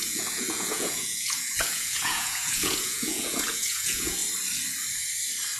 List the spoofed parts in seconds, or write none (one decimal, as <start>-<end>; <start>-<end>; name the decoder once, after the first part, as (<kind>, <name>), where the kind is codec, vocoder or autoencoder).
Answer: 0.0-4.2 (vocoder, Vocos)